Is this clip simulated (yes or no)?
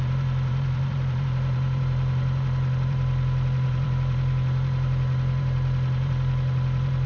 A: yes